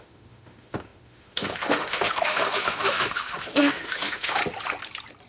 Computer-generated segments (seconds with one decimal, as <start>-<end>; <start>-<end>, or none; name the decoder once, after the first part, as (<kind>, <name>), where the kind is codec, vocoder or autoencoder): 0.0-4.4 (autoencoder, DAC-VAE)